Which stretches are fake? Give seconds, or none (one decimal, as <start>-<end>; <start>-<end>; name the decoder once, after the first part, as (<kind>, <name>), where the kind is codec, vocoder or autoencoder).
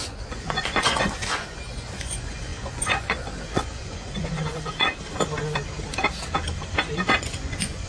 0.0-4.9 (vocoder, Vocos); 7.2-7.9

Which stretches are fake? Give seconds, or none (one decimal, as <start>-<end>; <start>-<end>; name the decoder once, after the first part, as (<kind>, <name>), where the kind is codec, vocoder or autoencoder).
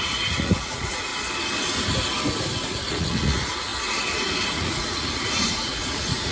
0.0-1.1 (vocoder, Vocos); 2.8-3.7; 4.5-6.3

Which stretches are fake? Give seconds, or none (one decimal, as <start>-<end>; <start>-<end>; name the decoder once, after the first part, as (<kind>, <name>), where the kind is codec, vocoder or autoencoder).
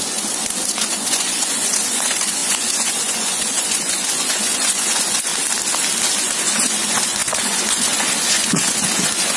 0.0-5.3 (vocoder, Vocos); 6.2-9.4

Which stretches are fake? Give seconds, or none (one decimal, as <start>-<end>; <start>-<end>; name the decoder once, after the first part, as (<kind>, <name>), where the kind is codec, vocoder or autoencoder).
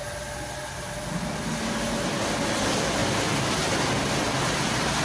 none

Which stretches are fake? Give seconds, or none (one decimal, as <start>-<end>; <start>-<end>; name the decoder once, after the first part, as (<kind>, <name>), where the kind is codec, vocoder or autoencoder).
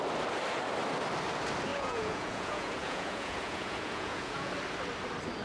1.7-4.5 (vocoder, Vocos)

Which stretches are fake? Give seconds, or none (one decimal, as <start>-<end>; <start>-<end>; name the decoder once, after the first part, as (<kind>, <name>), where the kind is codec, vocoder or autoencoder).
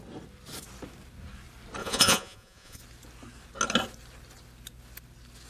1.8-2.8 (vocoder, Vocos)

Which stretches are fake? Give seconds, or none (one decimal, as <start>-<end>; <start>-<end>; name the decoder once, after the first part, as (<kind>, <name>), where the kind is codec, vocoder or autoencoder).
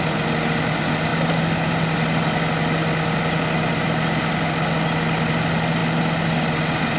none